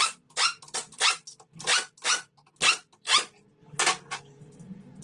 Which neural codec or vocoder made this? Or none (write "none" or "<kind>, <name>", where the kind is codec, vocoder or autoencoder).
none